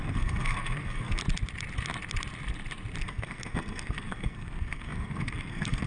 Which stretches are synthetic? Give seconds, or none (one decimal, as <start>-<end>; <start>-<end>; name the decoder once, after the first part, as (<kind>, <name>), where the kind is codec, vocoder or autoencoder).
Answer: 0.0-1.2 (codec, SNAC); 3.0-5.9